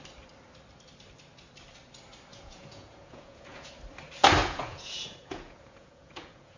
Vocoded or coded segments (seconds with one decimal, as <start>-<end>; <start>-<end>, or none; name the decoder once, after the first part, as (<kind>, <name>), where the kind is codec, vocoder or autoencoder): 2.3-3.7 (vocoder, Vocos); 4.4-6.6